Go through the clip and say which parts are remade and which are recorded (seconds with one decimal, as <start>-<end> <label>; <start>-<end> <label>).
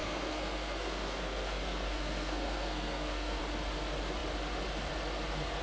0.0-3.4 remade; 3.4-5.6 recorded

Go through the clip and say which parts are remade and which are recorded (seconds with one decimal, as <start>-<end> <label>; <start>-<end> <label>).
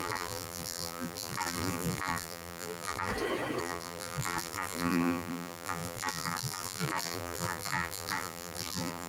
0.0-3.1 remade; 3.1-3.6 recorded; 3.6-9.1 remade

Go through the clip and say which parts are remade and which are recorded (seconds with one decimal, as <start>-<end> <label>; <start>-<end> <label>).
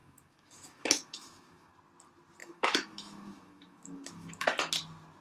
0.0-1.7 remade; 1.7-2.4 recorded; 2.4-4.6 remade; 4.6-5.2 recorded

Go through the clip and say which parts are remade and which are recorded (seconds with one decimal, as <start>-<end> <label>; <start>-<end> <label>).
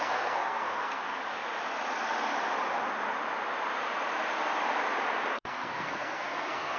0.0-1.2 remade; 1.2-5.3 recorded; 5.3-6.8 remade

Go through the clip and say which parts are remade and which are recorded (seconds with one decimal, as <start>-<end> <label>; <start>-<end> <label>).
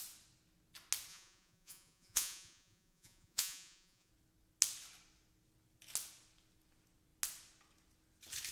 0.0-1.1 recorded; 1.1-4.1 remade; 4.1-8.5 recorded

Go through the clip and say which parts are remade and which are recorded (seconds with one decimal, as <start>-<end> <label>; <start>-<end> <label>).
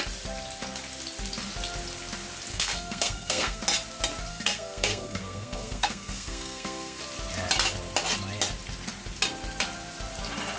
0.0-2.5 recorded; 2.5-3.6 remade; 3.6-4.3 recorded; 4.3-7.0 remade; 7.0-10.6 recorded